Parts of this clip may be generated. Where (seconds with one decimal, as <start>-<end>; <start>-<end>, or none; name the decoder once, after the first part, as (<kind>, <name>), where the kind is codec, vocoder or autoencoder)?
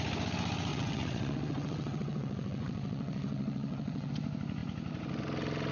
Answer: 0.7-4.1 (vocoder, WaveNeXt)